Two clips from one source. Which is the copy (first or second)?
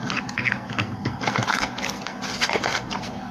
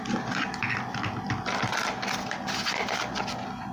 first